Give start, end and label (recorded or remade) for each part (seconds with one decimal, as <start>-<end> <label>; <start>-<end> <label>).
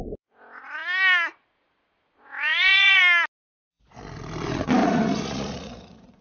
0.0-2.5 recorded; 2.5-3.0 remade; 3.0-4.8 recorded; 4.8-6.2 remade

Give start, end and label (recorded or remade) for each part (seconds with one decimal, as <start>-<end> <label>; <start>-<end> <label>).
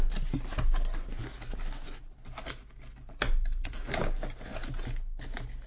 0.0-5.7 recorded